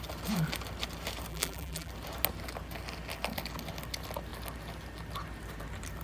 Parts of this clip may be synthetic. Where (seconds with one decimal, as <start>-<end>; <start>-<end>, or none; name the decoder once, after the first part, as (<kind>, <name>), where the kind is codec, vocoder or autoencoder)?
1.3-1.9 (vocoder, BigVGAN v2)